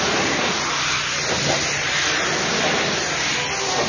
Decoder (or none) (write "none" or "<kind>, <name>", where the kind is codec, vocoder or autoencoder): none